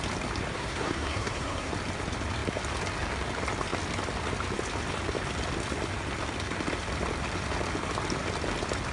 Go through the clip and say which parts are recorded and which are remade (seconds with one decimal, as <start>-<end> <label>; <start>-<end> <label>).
0.0-0.5 recorded; 0.5-1.7 remade; 1.7-8.9 recorded